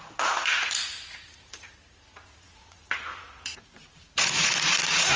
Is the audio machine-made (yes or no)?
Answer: yes